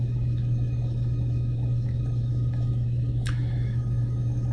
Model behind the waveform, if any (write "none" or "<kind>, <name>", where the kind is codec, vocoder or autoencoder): autoencoder, DAC-VAE